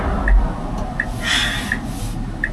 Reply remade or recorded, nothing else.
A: recorded